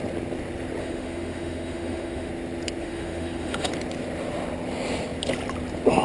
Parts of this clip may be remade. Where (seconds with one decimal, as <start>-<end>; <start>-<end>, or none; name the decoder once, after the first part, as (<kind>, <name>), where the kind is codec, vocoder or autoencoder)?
0.8-2.3 (autoencoder, DAC-VAE); 2.8-3.7